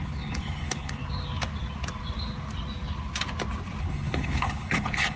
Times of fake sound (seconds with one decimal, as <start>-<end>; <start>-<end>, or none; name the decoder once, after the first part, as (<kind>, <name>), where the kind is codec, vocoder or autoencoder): 0.0-1.0 (codec, HILCodec); 3.8-5.2